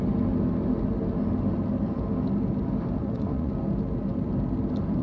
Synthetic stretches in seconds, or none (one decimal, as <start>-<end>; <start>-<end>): 3.0-3.5